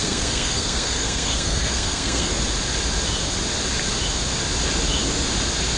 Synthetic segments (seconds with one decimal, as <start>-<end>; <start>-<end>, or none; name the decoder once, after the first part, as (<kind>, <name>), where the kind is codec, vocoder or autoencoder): 0.0-2.3 (codec, SNAC)